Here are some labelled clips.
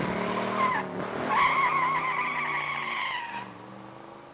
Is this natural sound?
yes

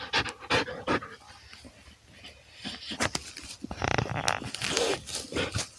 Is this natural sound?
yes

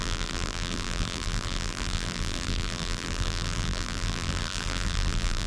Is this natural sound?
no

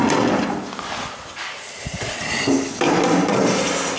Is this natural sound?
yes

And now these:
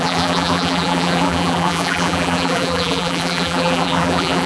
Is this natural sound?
no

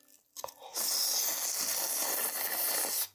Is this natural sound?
yes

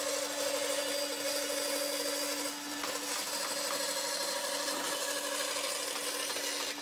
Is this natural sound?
yes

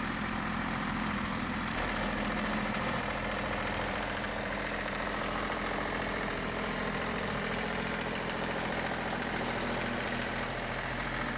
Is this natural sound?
no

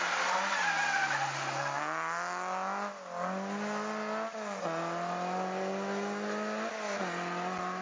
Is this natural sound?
yes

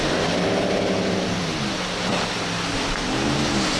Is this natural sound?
yes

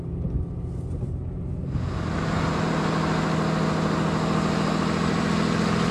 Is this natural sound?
yes